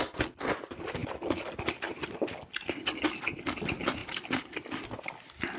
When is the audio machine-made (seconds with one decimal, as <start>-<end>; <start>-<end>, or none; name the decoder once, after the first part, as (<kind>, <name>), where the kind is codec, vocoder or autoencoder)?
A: 4.0-5.1 (vocoder, BigVGAN v2)